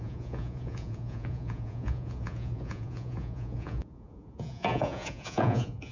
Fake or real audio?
fake